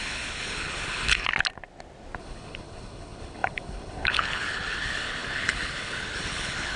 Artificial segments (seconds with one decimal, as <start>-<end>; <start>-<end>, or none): 0.0-1.3; 2.2-6.8

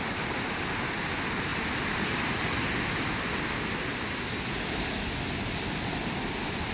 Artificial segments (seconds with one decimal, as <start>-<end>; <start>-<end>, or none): none

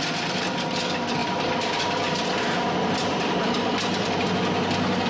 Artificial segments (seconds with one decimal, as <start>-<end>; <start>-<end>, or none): 1.2-4.3

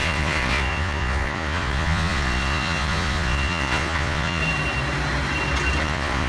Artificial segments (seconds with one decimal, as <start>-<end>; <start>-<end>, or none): 0.0-4.4; 5.8-6.3

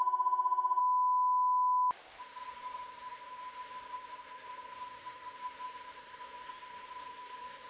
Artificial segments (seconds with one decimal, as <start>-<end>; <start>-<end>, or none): 0.0-0.8; 2.2-7.7

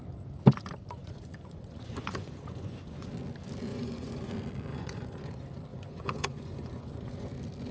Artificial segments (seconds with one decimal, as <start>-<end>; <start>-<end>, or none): 1.0-3.1; 3.7-4.3; 4.7-5.3; 5.7-7.3

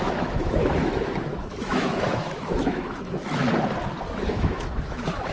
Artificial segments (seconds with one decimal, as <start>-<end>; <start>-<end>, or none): 0.0-3.4; 4.3-5.3